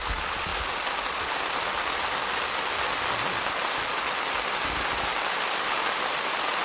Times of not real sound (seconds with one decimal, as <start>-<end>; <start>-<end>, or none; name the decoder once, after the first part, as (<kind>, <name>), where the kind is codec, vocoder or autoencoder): none